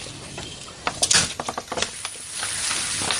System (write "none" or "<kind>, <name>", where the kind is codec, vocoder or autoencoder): none